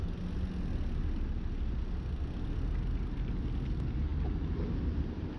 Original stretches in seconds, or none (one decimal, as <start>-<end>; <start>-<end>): 0.0-5.4